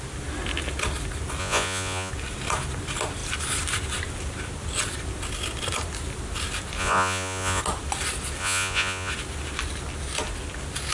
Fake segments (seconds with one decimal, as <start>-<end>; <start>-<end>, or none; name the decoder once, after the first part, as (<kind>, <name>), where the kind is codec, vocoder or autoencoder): 1.4-2.1 (vocoder, Vocos); 6.8-7.6; 8.4-9.1